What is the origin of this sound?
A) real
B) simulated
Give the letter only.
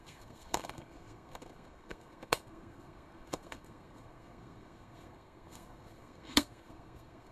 B